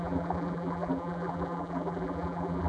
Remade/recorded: remade